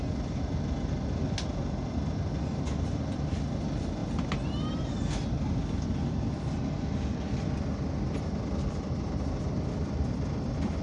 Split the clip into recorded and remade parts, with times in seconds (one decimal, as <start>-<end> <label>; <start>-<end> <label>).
0.0-10.8 recorded